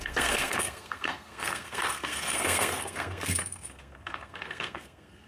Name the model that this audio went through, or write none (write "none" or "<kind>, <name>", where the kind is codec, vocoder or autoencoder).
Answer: codec, SNAC